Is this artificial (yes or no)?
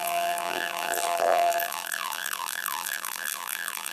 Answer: yes